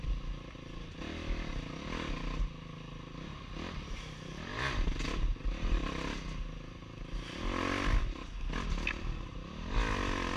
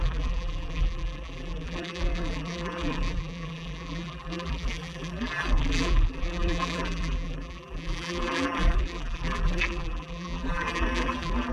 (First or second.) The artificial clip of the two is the second